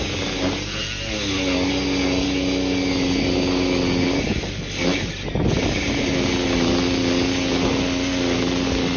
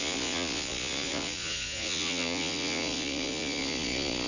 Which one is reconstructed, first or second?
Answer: second